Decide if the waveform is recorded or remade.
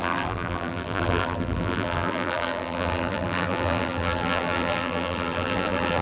remade